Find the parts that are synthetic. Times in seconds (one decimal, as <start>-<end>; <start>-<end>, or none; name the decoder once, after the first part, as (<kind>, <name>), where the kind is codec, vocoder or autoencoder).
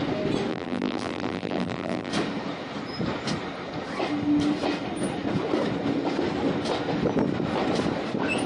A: 0.5-2.1 (vocoder, BigVGAN v2)